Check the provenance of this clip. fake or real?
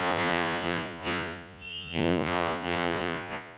fake